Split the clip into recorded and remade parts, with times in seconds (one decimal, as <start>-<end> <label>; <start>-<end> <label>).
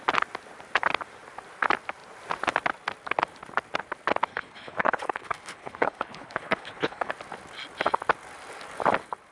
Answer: 0.0-4.3 recorded; 4.3-7.1 remade; 7.1-9.3 recorded